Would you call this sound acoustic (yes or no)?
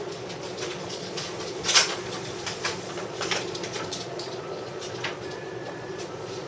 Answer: no